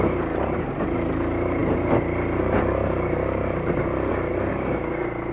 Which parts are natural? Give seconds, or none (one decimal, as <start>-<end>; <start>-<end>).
0.0-5.3